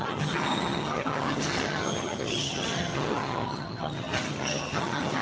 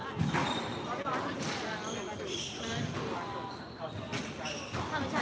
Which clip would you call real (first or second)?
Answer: second